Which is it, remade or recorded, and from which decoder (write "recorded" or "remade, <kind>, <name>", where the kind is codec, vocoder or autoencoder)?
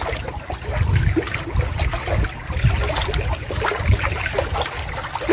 recorded